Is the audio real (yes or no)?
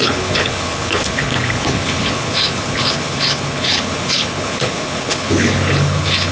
no